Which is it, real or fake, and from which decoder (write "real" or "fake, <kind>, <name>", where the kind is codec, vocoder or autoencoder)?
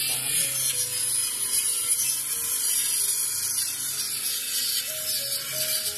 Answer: real